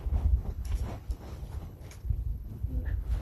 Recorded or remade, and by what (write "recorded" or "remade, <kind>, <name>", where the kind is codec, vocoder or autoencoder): remade, codec, HILCodec